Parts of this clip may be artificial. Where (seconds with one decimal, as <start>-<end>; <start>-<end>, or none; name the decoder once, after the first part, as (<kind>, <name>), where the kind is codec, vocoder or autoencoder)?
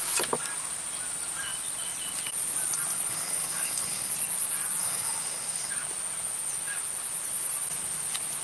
3.1-4.1 (codec, DAC); 4.8-5.7